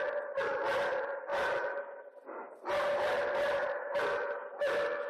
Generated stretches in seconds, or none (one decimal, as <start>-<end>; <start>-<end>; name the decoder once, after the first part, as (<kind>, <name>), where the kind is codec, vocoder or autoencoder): none

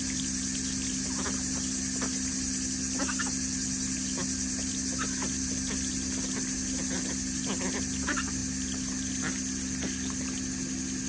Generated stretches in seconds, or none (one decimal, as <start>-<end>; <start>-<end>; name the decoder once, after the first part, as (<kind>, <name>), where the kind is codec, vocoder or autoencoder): none

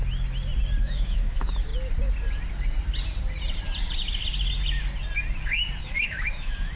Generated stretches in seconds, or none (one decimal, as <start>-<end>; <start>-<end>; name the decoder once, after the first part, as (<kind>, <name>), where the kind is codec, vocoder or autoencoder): 0.8-1.7 (autoencoder, DAC-VAE); 5.8-6.8

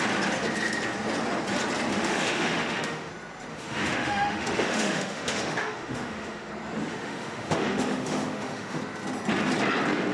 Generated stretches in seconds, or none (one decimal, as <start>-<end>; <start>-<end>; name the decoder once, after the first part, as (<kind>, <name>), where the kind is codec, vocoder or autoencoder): 1.9-3.1 (autoencoder, DAC-VAE); 3.5-6.5; 6.9-8.8